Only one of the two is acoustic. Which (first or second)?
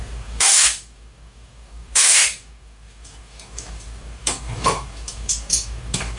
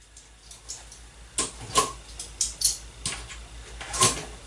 second